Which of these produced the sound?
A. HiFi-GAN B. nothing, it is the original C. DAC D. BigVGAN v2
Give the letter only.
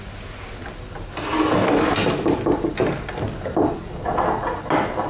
B